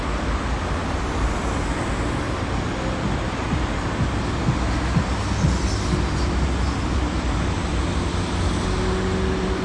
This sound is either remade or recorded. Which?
recorded